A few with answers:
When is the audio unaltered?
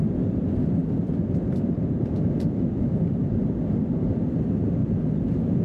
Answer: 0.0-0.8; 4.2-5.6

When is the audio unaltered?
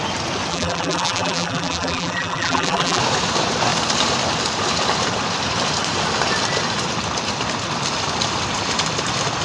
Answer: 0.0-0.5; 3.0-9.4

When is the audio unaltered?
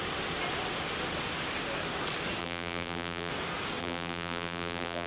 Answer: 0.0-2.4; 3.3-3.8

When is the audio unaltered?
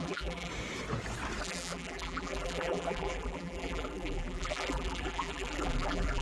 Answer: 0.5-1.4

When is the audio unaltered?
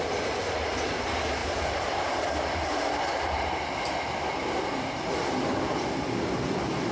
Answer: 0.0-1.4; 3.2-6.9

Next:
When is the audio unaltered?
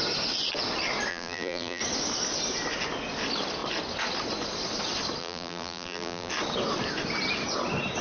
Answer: 0.0-1.1; 1.8-5.2; 6.3-8.0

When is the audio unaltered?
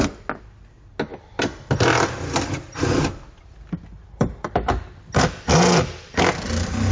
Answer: 0.0-1.1; 5.2-6.9